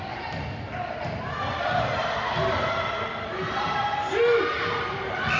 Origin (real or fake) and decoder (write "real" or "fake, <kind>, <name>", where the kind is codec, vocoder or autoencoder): real